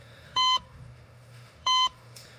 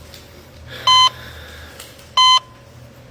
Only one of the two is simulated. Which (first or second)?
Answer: first